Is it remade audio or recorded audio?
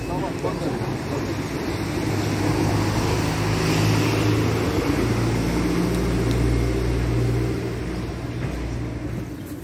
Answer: recorded